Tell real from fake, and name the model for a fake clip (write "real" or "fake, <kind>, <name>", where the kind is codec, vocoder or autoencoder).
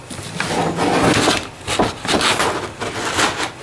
real